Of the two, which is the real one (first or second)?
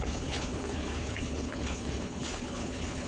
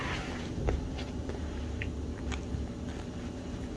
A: second